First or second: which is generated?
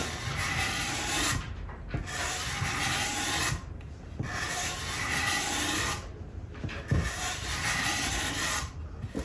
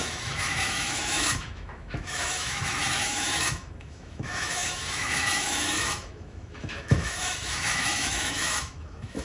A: second